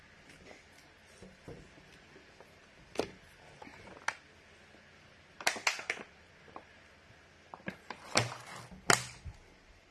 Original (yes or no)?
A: yes